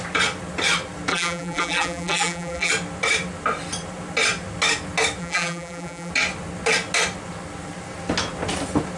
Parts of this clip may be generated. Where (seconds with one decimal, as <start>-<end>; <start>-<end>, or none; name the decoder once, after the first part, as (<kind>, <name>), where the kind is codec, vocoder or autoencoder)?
1.1-2.7 (vocoder, BigVGAN v2); 5.2-6.1

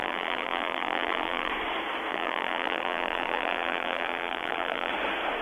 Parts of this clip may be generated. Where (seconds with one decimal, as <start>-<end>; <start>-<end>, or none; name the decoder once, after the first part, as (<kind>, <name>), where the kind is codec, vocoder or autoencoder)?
0.0-1.5 (vocoder, BigVGAN v2); 2.1-4.9

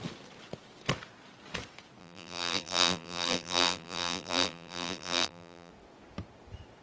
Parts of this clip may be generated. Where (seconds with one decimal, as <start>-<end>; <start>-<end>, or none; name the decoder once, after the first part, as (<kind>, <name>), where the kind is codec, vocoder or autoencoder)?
2.0-5.7 (vocoder, BigVGAN v2)

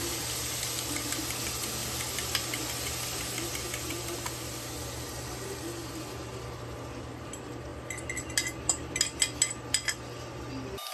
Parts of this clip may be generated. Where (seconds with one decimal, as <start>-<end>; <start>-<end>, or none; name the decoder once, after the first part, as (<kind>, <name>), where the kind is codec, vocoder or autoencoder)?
none

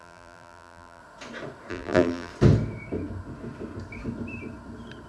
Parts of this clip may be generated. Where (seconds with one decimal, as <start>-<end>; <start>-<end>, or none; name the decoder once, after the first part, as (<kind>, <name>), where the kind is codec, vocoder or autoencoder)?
0.0-1.0 (vocoder, BigVGAN v2); 1.7-2.3